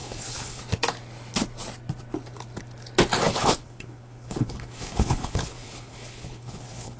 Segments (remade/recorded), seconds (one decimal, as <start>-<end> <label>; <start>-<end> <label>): 0.0-0.6 remade; 0.6-3.3 recorded; 3.3-7.0 remade